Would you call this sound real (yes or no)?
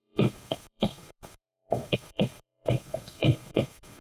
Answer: no